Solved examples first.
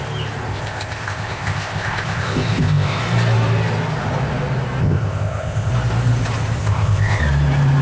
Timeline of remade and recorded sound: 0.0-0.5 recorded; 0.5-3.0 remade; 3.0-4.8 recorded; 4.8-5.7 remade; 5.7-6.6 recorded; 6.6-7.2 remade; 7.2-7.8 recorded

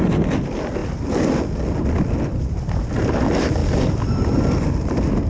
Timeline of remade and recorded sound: 0.0-5.3 recorded